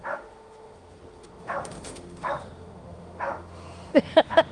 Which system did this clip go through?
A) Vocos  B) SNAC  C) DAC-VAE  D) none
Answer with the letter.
C